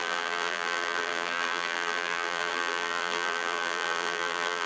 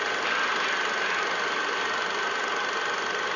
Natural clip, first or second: second